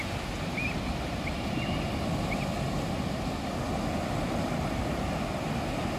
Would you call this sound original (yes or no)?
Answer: yes